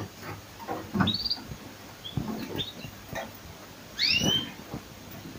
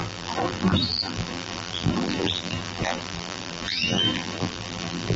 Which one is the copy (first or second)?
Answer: second